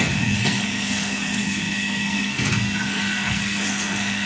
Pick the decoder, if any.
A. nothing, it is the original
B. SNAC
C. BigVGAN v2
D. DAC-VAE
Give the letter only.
B